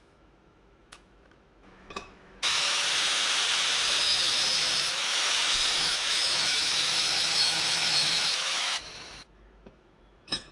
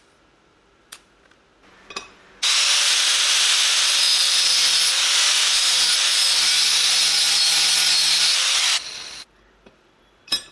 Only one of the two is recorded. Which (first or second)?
second